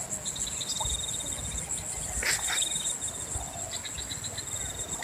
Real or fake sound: real